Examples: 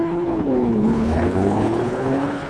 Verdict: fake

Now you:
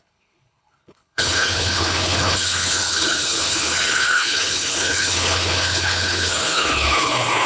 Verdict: fake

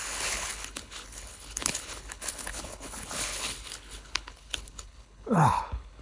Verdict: fake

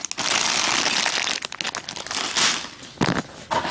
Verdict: real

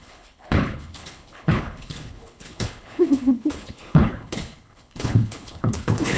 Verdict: fake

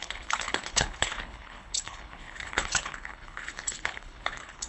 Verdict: fake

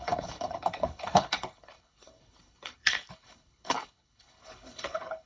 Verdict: fake